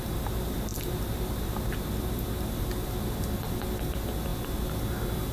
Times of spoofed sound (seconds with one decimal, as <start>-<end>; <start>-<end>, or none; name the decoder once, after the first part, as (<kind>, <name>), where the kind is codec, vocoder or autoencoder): 0.0-4.3 (vocoder, BigVGAN v2)